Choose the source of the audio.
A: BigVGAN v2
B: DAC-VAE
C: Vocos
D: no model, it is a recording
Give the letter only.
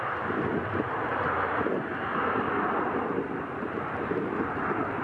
A